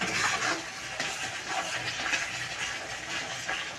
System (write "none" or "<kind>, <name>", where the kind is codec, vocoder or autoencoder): none